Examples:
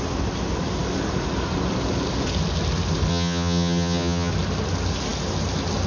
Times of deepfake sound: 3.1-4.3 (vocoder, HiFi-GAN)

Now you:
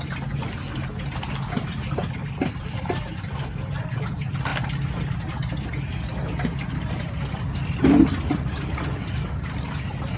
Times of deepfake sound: none

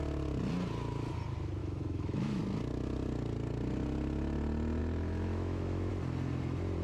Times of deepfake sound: 1.6-2.4 (autoencoder, DAC-VAE); 4.8-5.9

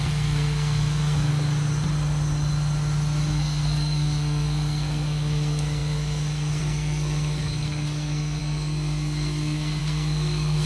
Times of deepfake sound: 0.0-1.3 (codec, SNAC); 3.3-10.7